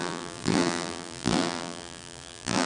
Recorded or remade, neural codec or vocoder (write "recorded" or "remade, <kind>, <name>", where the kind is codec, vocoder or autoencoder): remade, vocoder, BigVGAN v2